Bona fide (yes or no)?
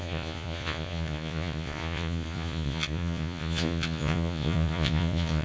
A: no